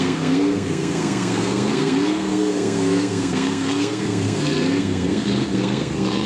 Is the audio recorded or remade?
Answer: remade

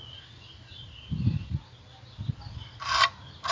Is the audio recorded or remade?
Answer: recorded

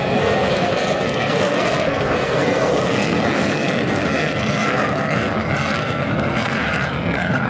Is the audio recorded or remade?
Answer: remade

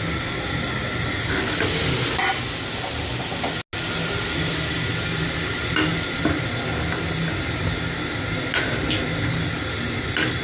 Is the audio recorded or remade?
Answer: recorded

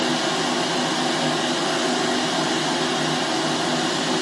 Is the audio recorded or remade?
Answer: recorded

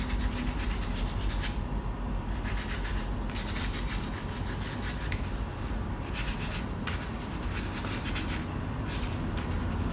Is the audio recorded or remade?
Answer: recorded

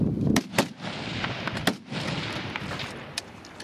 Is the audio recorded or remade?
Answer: recorded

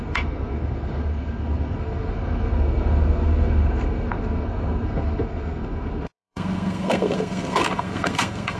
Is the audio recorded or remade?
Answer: remade